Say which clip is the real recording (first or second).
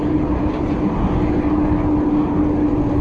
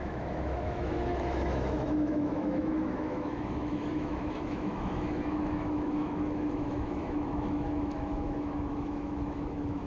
first